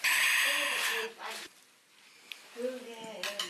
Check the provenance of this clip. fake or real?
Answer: real